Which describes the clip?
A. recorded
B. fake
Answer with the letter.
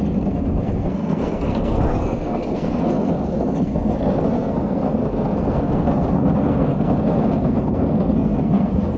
B